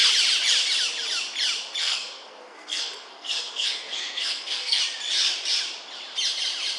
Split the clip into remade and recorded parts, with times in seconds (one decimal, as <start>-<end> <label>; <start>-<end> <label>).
0.0-1.8 recorded; 1.8-4.8 remade; 4.8-6.8 recorded